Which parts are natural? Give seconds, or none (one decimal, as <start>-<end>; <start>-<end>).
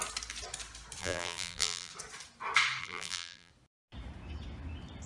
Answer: 0.0-1.0; 1.9-2.8; 3.5-5.1